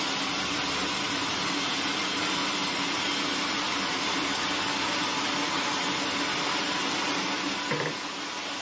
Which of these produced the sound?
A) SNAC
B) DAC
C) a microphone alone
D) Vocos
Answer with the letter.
C